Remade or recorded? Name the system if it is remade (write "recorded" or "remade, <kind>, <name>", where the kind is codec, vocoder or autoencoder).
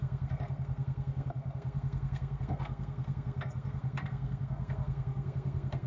remade, codec, SNAC